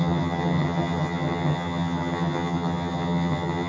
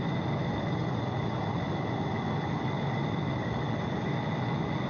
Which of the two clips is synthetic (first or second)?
first